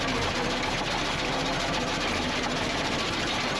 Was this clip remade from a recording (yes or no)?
no